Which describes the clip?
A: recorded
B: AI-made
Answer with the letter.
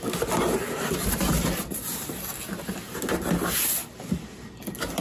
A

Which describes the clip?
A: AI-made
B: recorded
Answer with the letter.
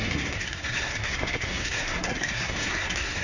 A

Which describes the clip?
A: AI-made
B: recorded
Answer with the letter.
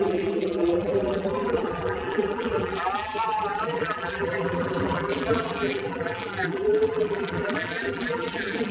A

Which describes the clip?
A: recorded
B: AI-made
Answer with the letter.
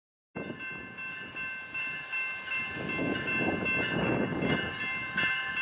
A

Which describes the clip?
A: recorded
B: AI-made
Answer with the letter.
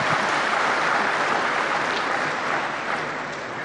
A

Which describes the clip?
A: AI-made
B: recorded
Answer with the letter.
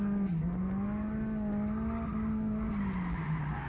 B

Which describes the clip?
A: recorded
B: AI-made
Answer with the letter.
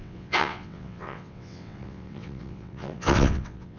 B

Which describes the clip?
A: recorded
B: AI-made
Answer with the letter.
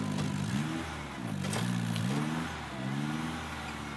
A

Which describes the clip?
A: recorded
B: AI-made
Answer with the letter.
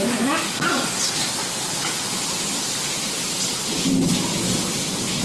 A